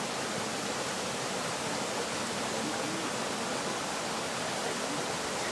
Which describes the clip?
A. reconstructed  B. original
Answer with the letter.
B